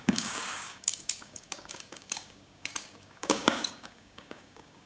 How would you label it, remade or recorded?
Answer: remade